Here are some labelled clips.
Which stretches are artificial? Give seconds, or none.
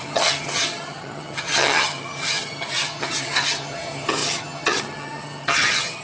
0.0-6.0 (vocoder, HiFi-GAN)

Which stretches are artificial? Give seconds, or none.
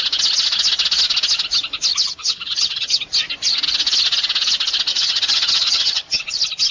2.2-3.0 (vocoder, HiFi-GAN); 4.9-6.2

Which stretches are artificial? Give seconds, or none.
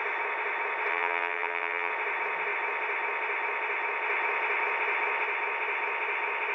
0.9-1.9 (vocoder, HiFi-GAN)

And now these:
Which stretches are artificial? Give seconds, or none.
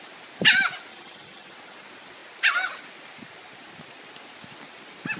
0.9-1.5 (vocoder, HiFi-GAN)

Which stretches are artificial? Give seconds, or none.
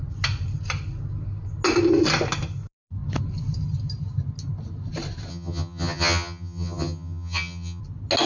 5.3-7.8 (vocoder, HiFi-GAN)